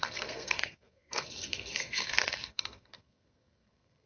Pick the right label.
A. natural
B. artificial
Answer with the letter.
B